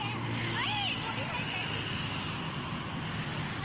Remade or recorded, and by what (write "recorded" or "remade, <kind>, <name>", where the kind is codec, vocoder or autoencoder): recorded